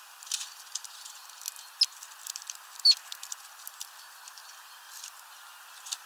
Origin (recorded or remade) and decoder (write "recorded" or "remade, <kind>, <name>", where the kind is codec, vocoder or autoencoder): recorded